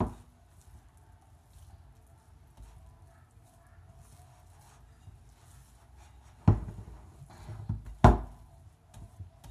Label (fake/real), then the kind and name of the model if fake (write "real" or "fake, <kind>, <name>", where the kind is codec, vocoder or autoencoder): real